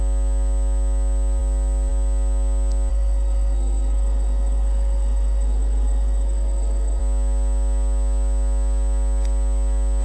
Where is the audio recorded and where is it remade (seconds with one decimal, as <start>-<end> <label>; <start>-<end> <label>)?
0.0-2.9 recorded; 2.9-7.0 remade; 7.0-10.0 recorded